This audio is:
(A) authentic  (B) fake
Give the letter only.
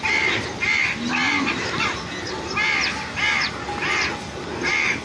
A